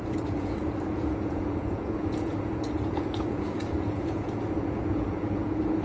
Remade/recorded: remade